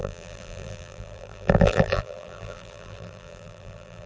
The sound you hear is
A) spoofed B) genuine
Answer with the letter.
A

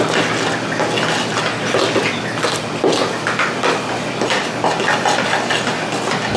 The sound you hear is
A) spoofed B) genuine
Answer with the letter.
B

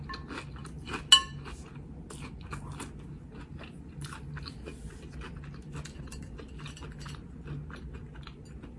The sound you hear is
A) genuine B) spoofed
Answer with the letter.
A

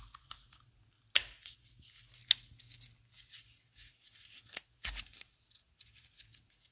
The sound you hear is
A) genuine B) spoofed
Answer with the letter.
A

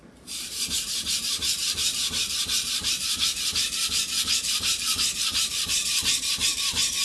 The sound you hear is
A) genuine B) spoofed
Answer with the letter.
B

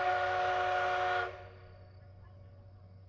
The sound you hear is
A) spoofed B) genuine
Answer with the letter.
B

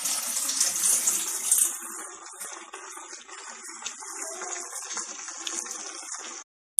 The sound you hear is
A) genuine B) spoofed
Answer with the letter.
A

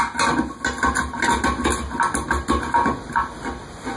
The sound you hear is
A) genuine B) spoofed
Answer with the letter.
A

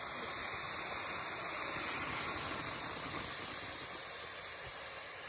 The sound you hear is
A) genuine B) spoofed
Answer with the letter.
A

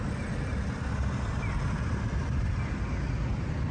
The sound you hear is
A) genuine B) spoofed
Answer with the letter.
A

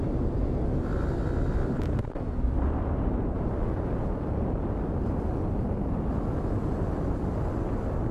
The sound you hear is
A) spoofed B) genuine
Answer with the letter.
B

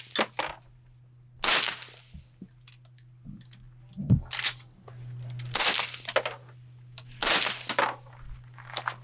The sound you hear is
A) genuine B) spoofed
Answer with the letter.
A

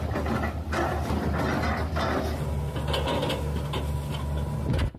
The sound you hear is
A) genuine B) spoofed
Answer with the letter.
A